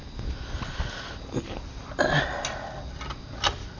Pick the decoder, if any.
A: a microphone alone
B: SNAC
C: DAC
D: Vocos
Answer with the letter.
A